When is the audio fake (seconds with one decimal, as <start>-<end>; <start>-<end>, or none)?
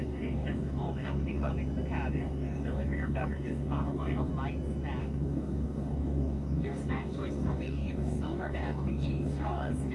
0.0-1.5; 2.1-4.3; 5.0-9.9